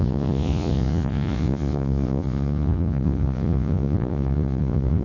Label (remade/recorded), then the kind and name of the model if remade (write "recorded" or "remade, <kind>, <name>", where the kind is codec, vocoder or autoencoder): remade, vocoder, Vocos